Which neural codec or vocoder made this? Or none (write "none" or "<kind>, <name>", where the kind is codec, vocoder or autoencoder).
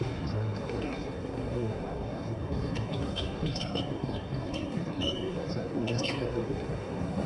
codec, SNAC